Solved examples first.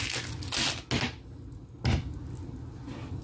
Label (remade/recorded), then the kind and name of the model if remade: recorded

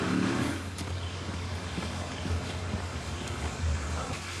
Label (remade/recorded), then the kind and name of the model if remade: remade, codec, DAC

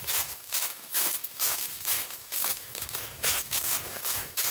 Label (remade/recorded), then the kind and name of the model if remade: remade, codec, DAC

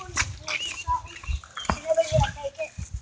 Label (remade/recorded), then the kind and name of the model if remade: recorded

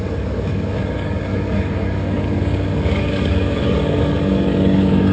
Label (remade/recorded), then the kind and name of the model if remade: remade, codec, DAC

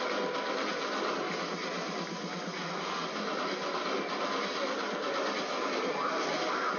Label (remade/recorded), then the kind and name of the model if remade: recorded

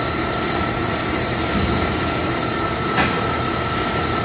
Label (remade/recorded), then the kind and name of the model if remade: recorded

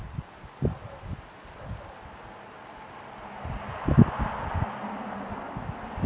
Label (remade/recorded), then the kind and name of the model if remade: recorded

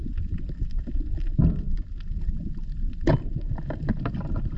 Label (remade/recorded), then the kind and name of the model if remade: recorded